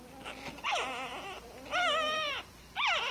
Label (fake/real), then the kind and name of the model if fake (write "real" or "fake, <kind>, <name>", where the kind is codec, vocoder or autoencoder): real